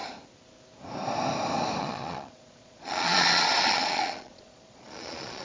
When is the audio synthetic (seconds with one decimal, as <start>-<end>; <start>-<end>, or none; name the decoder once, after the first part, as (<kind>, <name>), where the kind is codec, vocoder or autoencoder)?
1.8-5.4 (vocoder, Vocos)